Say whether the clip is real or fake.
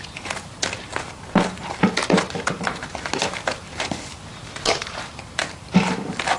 fake